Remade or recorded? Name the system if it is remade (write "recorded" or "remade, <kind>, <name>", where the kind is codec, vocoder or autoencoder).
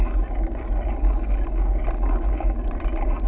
recorded